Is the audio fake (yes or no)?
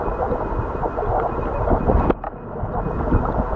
no